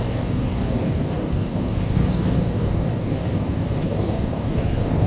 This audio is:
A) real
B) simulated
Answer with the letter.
B